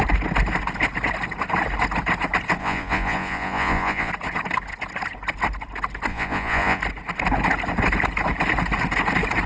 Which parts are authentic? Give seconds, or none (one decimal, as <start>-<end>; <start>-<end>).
0.0-2.6; 4.1-6.1; 6.8-9.5